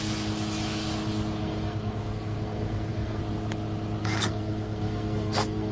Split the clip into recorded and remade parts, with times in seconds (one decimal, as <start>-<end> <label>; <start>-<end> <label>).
0.0-1.4 recorded; 1.4-3.2 remade; 3.2-4.0 recorded; 4.0-5.7 remade